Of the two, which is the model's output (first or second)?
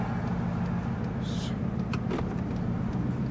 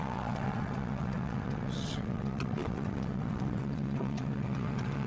second